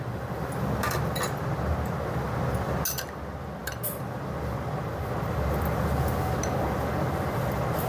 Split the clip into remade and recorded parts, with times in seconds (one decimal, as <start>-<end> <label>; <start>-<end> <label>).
0.0-7.9 recorded